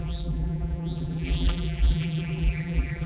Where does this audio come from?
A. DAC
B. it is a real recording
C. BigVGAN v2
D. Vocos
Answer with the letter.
C